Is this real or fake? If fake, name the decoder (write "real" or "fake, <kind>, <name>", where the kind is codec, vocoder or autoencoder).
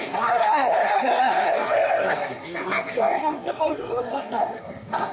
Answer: fake, codec, SNAC